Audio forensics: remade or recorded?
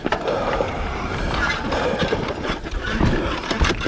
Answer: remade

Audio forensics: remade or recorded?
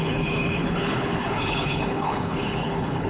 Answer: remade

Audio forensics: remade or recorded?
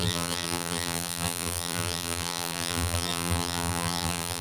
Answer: remade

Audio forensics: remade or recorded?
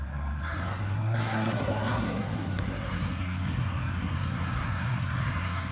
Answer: remade